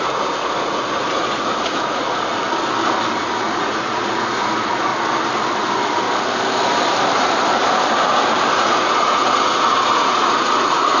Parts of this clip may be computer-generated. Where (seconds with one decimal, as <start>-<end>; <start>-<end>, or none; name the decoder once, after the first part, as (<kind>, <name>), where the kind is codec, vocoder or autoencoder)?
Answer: 0.0-2.3 (vocoder, Vocos); 3.5-4.9; 8.5-11.0